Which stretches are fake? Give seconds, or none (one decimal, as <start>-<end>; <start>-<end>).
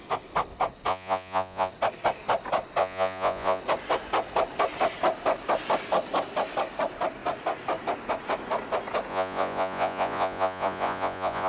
0.9-1.7; 2.8-3.6; 9.1-11.5